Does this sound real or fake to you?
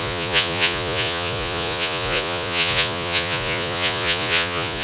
fake